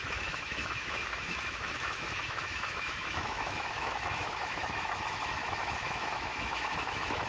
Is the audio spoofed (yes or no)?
yes